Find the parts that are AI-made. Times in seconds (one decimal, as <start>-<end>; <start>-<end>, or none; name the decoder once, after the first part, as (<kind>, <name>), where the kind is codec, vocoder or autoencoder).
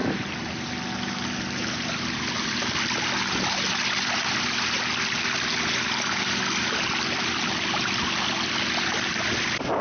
none